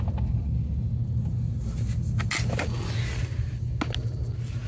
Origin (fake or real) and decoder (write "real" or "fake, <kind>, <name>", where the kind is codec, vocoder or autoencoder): real